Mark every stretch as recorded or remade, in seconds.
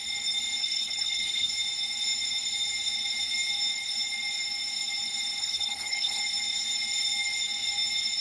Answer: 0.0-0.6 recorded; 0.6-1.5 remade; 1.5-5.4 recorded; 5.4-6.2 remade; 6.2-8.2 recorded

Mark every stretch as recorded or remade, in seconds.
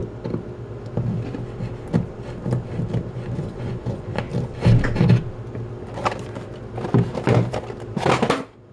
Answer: 0.0-3.1 recorded; 3.1-4.3 remade; 4.3-8.7 recorded